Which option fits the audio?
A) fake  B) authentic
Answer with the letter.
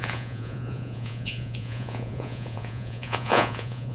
A